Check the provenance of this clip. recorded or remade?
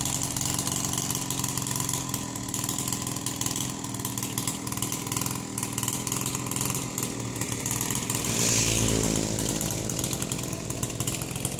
recorded